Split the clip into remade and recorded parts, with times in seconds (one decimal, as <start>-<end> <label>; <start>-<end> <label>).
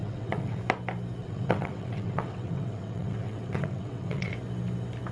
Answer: 0.0-0.6 remade; 0.6-1.2 recorded; 1.2-4.3 remade; 4.3-5.1 recorded